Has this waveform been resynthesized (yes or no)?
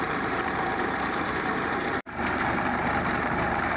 yes